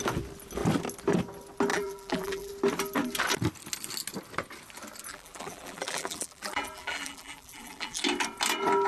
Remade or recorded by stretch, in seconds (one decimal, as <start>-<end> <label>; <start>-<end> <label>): 0.0-1.7 recorded; 1.7-2.5 remade; 2.5-5.1 recorded; 5.1-8.0 remade; 8.0-8.9 recorded